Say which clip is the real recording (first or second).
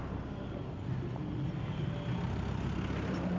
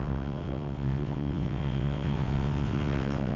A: first